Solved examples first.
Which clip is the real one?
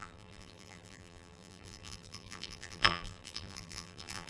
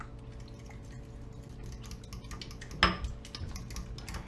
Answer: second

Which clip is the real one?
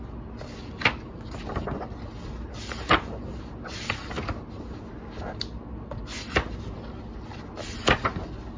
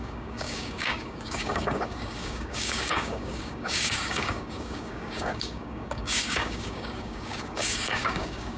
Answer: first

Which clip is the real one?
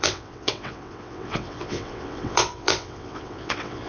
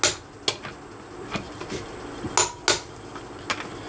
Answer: second